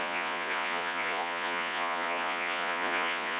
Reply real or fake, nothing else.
fake